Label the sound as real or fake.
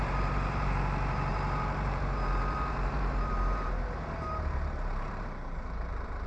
fake